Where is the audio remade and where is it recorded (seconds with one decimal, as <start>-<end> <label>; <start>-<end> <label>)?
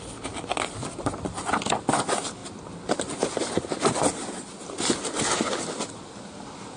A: 0.0-6.8 recorded